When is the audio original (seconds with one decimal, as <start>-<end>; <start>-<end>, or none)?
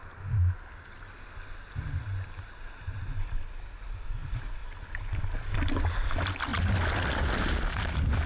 0.0-8.3